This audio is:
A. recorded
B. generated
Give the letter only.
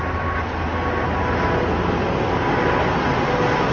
A